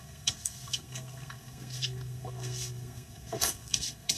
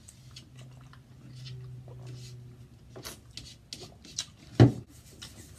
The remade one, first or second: first